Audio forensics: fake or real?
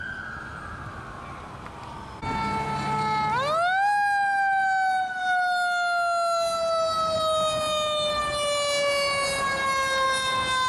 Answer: real